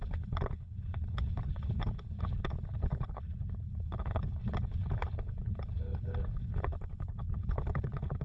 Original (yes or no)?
no